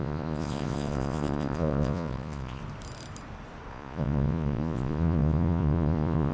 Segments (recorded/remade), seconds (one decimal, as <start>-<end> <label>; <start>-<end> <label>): 0.0-2.6 remade; 2.6-3.7 recorded; 3.7-6.3 remade